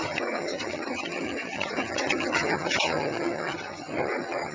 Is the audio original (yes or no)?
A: no